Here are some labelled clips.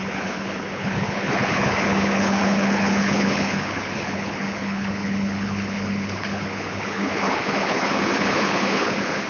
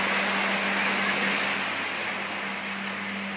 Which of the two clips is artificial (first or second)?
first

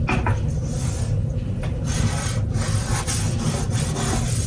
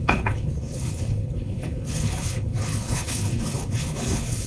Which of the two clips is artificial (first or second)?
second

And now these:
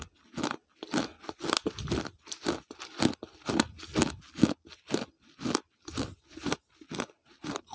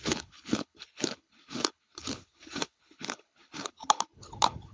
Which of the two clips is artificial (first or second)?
second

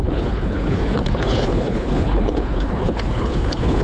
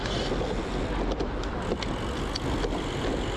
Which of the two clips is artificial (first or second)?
first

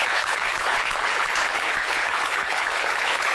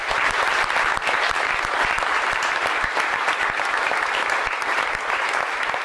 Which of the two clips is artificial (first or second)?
first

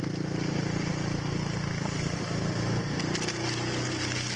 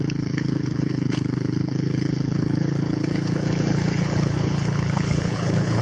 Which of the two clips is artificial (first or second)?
second